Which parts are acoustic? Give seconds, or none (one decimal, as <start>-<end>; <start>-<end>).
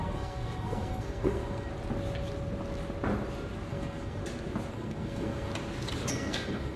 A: 1.7-3.7; 4.2-4.7; 5.5-6.1